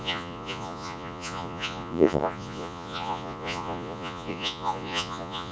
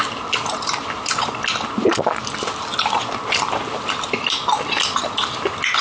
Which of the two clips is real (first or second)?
second